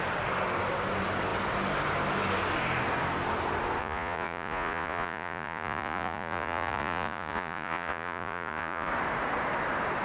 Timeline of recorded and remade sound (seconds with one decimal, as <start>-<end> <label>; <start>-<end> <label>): 0.0-3.8 recorded; 3.8-8.9 remade; 8.9-10.0 recorded

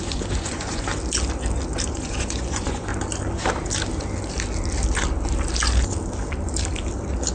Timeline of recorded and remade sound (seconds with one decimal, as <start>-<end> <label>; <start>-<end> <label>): 0.0-0.9 remade; 0.9-1.9 recorded; 1.9-2.9 remade; 2.9-7.3 recorded

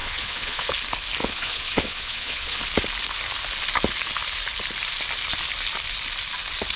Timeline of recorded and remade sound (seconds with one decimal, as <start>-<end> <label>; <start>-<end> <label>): 0.0-0.7 remade; 0.7-1.2 recorded; 1.2-2.6 remade; 2.6-6.8 recorded

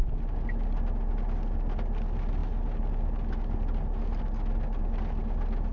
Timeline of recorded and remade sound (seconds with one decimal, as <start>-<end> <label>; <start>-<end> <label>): 0.0-5.7 recorded

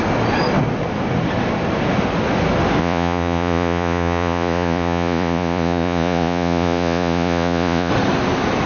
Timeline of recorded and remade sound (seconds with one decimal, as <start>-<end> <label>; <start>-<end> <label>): 0.0-2.8 recorded; 2.8-7.9 remade; 7.9-8.7 recorded

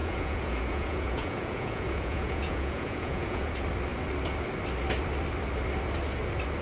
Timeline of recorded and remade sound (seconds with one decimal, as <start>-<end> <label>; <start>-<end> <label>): 0.0-3.5 remade; 3.5-6.6 recorded